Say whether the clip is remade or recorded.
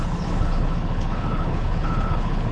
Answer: remade